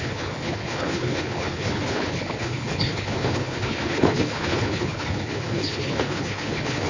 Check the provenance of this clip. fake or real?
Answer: fake